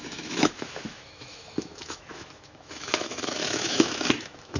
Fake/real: fake